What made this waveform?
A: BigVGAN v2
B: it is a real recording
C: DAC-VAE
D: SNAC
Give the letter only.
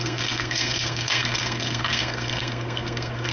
D